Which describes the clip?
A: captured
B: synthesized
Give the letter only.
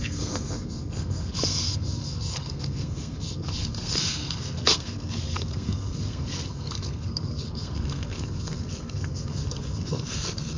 B